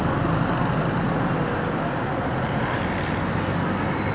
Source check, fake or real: real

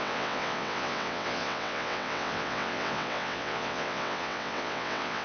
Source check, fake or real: fake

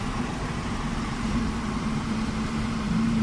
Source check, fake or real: fake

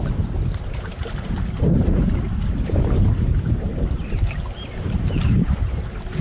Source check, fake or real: fake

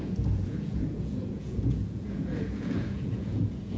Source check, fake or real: fake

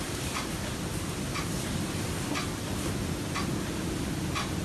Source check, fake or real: real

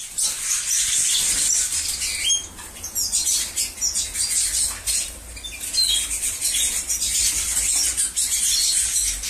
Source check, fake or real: real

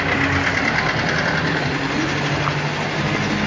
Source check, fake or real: real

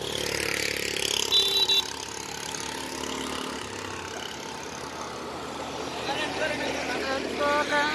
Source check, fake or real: real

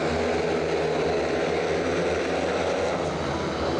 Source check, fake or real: real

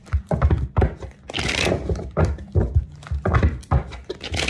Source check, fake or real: fake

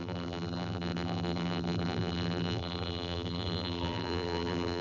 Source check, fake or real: fake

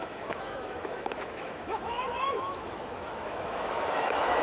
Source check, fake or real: fake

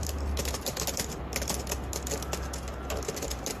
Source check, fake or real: real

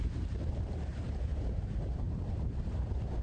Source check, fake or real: fake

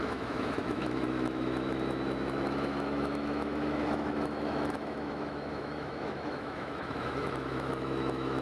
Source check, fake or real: fake